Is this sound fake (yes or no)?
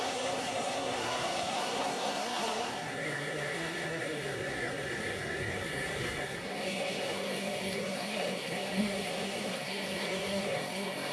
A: yes